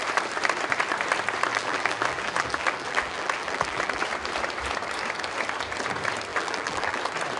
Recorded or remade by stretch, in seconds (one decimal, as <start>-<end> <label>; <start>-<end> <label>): 0.0-1.5 recorded; 1.5-4.0 remade; 4.0-6.3 recorded; 6.3-7.0 remade; 7.0-7.4 recorded